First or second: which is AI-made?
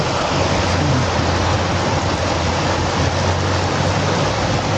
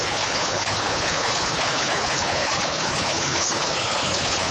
second